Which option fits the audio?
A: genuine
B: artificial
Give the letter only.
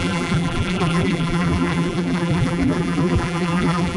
B